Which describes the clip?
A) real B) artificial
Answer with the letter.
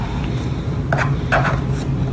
A